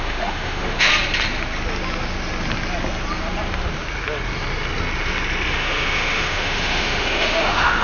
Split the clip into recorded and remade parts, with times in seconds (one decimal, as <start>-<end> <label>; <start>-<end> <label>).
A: 0.0-0.9 remade; 0.9-5.5 recorded; 5.5-7.8 remade